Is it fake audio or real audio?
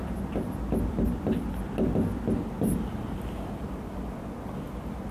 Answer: real